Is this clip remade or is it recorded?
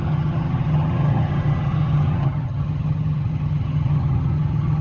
remade